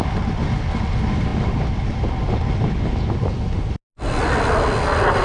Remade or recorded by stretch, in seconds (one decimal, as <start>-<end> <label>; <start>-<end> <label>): 0.0-5.2 recorded